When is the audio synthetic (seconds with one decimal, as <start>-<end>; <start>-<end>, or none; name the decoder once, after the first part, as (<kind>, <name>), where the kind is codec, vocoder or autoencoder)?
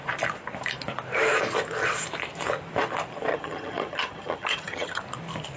3.3-5.0 (vocoder, HiFi-GAN)